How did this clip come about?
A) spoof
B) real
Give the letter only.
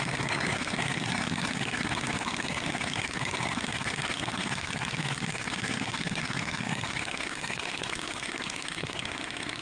A